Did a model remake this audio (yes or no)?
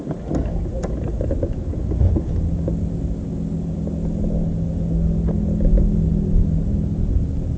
no